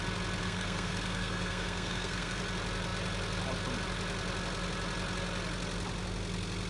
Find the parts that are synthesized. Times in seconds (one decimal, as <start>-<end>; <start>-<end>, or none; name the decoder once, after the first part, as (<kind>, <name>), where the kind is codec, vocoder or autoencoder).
0.4-2.4 (codec, SNAC)